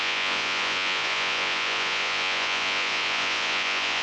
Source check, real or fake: fake